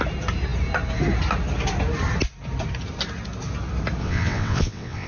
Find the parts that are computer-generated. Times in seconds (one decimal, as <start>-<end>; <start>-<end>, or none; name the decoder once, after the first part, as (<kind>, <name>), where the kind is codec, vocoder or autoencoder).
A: 4.0-5.1 (vocoder, WaveNeXt)